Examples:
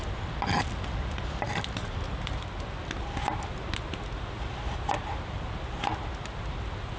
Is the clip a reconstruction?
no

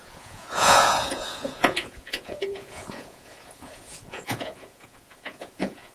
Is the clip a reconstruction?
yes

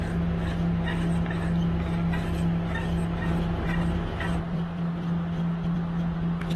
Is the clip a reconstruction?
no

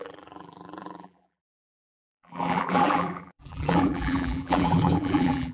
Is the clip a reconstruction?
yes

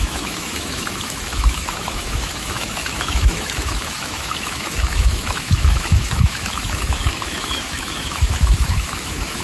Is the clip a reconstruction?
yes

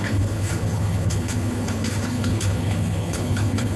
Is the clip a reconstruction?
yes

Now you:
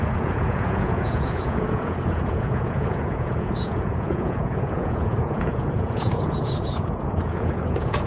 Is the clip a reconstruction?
yes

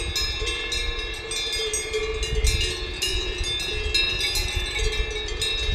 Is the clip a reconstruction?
no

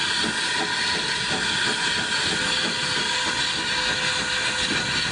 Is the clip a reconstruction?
no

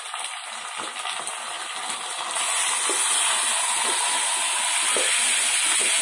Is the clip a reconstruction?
no